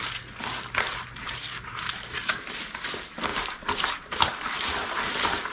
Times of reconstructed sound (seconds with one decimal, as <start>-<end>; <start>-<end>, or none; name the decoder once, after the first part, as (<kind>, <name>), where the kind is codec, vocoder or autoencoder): 1.2-2.7 (vocoder, BigVGAN v2); 3.3-4.2